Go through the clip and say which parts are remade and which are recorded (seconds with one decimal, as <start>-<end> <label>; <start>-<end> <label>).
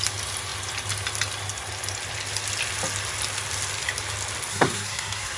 0.0-4.5 recorded; 4.5-5.4 remade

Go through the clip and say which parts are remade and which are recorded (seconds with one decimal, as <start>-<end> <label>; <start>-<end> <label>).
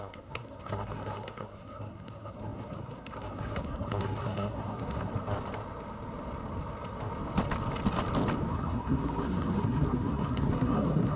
0.0-5.1 remade; 5.1-8.5 recorded; 8.5-11.2 remade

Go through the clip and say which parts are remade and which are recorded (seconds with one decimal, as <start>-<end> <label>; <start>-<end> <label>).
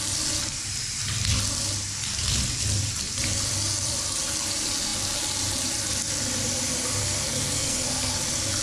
0.0-7.0 recorded; 7.0-8.2 remade; 8.2-8.6 recorded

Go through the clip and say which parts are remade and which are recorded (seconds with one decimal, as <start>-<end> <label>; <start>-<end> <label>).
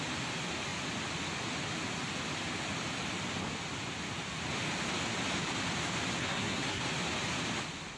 0.0-6.2 recorded; 6.2-6.8 remade; 6.8-8.0 recorded